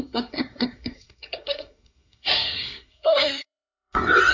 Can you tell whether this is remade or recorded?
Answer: remade